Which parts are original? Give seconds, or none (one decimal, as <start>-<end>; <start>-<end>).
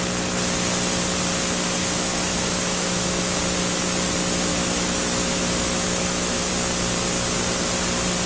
0.0-1.8; 3.4-4.5; 6.5-8.3